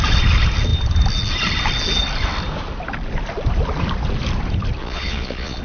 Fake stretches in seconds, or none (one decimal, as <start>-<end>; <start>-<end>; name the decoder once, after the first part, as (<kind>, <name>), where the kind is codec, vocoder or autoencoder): 4.8-5.6 (vocoder, Vocos)